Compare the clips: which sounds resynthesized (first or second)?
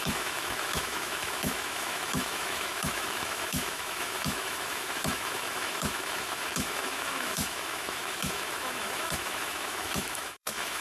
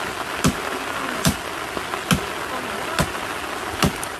first